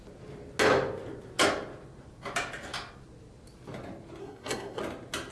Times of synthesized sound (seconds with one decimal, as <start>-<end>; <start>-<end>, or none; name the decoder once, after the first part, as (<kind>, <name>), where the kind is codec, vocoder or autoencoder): 4.2-4.8 (codec, SNAC)